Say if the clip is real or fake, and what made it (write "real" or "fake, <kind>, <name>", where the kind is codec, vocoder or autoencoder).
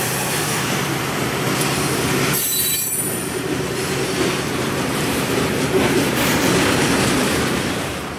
fake, vocoder, BigVGAN v2